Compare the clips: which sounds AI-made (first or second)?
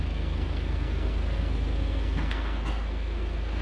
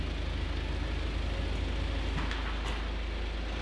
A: first